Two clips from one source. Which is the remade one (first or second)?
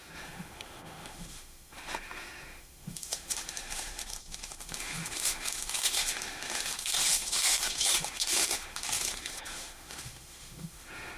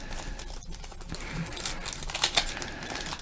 first